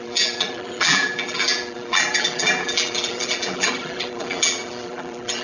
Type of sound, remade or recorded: remade